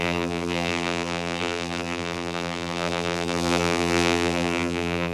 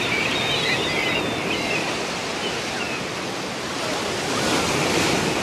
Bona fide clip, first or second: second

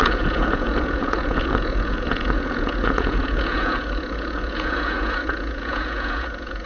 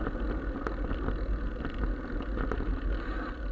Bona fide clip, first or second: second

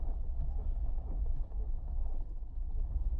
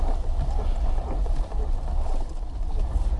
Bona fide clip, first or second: first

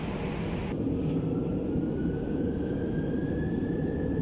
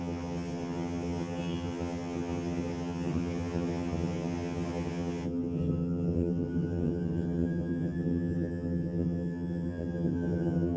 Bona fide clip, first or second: first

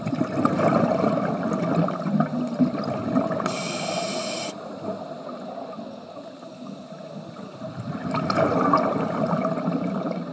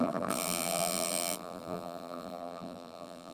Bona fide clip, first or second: first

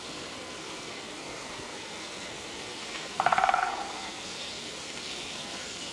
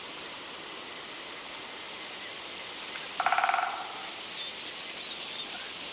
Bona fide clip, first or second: second